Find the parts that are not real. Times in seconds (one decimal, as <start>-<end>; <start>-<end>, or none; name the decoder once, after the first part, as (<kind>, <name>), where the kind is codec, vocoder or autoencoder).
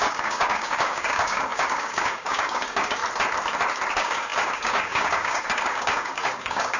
0.0-3.0 (codec, DAC); 3.9-6.8